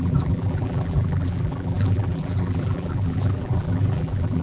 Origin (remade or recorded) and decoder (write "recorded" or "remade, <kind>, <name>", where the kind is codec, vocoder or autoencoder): remade, vocoder, BigVGAN v2